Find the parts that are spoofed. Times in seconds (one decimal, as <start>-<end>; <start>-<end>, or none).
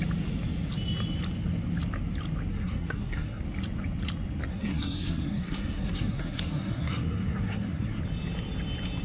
2.5-3.4; 4.5-8.0